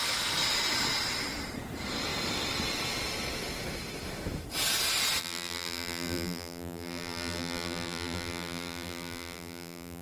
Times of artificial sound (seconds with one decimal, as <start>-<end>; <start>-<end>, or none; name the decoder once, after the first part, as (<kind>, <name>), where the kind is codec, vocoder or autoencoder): 5.2-10.0 (vocoder, BigVGAN v2)